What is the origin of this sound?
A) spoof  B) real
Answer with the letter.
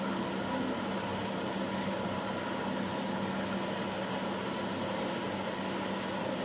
B